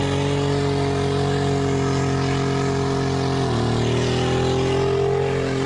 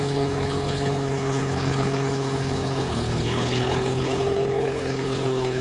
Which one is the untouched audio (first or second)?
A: first